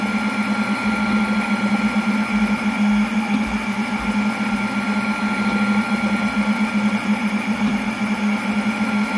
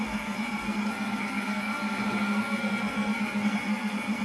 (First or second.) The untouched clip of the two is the first